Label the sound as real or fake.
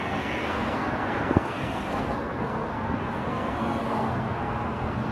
fake